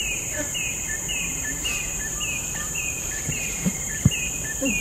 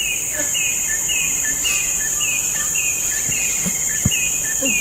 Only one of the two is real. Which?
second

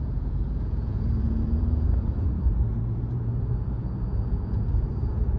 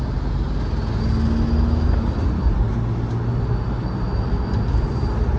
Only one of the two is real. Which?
second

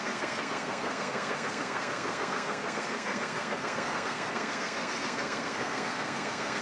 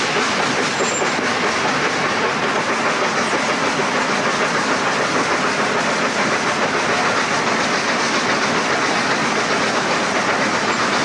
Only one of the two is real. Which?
second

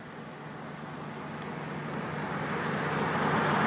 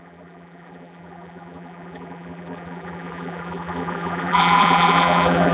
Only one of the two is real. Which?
first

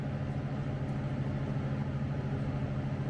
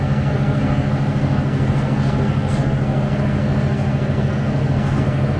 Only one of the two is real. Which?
first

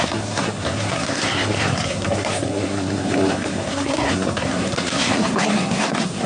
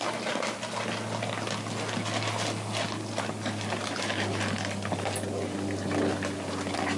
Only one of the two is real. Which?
second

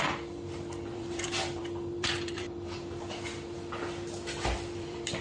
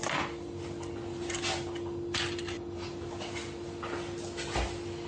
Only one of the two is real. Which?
second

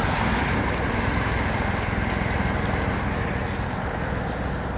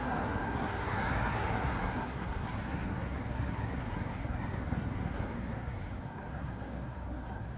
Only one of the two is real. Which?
first